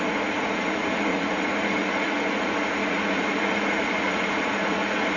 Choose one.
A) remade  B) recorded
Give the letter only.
A